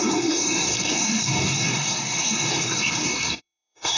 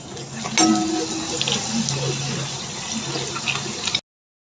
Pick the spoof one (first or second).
first